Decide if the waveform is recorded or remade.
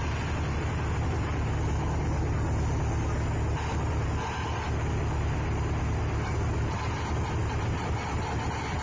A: recorded